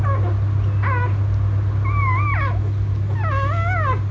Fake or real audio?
real